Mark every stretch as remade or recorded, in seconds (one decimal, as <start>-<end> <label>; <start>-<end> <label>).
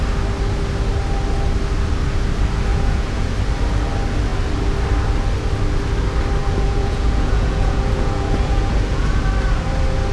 0.0-2.7 recorded; 2.7-3.3 remade; 3.3-6.4 recorded; 6.4-9.2 remade; 9.2-10.1 recorded